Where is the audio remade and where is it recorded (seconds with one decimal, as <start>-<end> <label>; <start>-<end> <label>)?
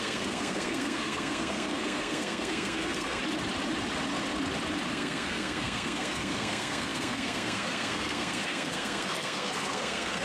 0.0-3.2 remade; 3.2-4.9 recorded; 4.9-10.2 remade